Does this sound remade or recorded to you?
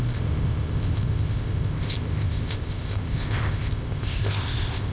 remade